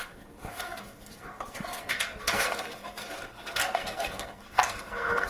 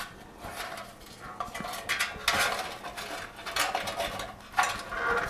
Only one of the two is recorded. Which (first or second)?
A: second